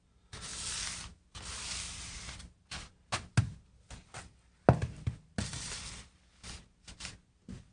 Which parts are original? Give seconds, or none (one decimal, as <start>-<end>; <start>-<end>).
0.0-7.7